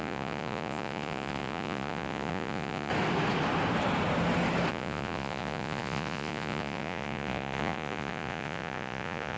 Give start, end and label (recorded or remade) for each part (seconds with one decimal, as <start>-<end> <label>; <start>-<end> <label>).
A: 0.0-2.9 remade; 2.9-4.7 recorded; 4.7-9.4 remade